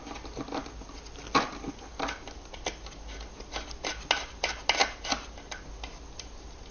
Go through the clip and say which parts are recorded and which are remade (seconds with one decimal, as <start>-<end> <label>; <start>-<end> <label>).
0.0-6.7 recorded